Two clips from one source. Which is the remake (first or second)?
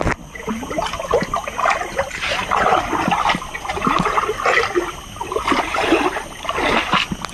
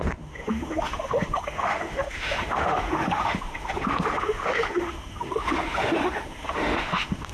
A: second